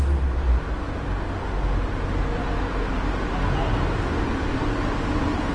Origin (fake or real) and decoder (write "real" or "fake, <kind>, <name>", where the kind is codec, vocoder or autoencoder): real